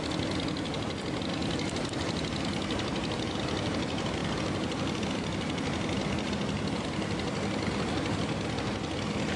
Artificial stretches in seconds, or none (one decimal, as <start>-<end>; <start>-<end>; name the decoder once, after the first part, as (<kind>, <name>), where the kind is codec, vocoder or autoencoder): none